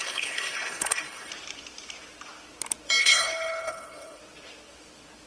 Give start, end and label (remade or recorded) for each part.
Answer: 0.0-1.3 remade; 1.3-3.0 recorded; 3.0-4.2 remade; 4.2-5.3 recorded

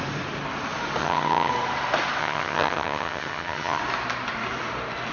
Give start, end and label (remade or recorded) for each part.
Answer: 0.0-1.0 recorded; 1.0-1.5 remade; 1.5-2.2 recorded; 2.2-3.8 remade; 3.8-5.1 recorded